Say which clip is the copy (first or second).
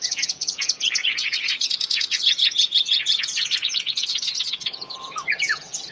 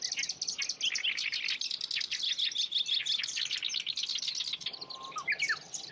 first